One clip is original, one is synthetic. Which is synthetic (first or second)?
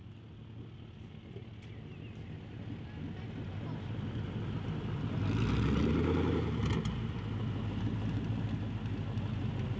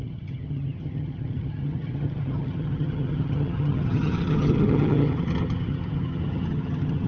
second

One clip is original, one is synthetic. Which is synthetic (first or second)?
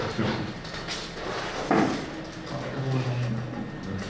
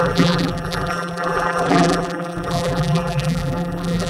second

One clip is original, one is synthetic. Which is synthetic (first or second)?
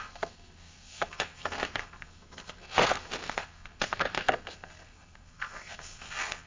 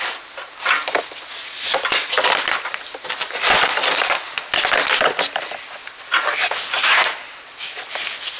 first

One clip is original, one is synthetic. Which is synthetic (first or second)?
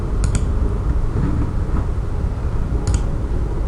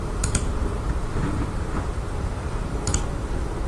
second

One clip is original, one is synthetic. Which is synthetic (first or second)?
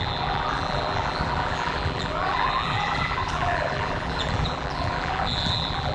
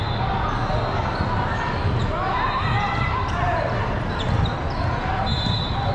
first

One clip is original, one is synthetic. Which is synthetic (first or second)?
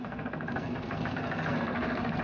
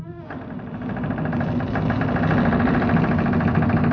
first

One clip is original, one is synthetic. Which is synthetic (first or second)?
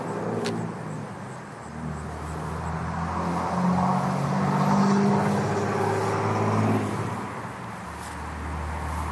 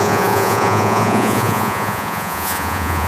second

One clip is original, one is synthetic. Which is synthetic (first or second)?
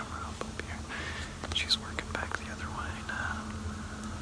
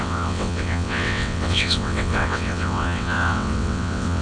second